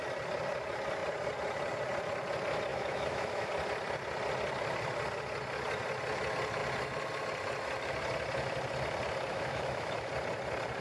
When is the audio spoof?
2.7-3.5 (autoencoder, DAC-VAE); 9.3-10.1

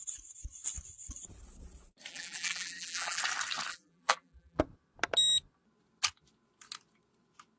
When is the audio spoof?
2.1-3.2 (vocoder, BigVGAN v2); 3.7-4.6

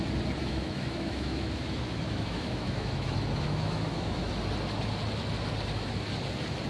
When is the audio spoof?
0.4-4.3 (autoencoder, DAC-VAE)

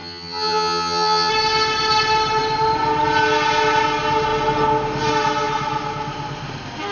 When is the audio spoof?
0.0-1.3 (vocoder, HiFi-GAN)